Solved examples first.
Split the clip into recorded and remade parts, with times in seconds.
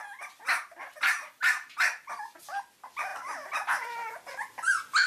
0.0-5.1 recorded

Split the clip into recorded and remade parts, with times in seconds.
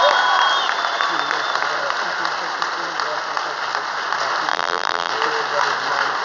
0.0-4.5 recorded; 4.5-5.1 remade; 5.1-6.2 recorded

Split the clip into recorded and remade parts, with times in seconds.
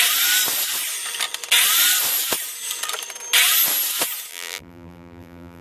0.0-4.3 recorded; 4.3-5.6 remade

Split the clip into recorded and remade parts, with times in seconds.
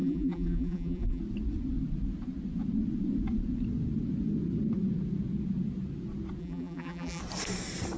0.0-1.2 remade; 1.2-6.4 recorded; 6.4-7.2 remade; 7.2-8.0 recorded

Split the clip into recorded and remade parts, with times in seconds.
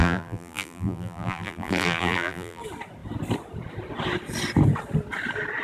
0.0-2.6 remade; 2.6-5.6 recorded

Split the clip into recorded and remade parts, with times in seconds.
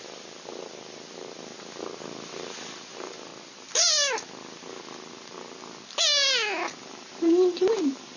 0.0-1.5 remade; 1.5-2.1 recorded; 2.1-3.3 remade; 3.3-6.8 recorded; 6.8-8.2 remade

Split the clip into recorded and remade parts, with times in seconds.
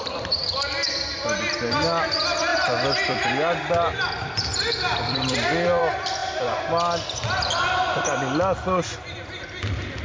0.0-2.5 recorded; 2.5-5.8 remade; 5.8-10.0 recorded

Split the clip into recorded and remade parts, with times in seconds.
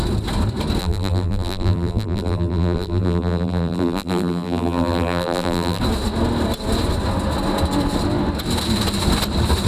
0.0-0.8 recorded; 0.8-5.8 remade; 5.8-9.7 recorded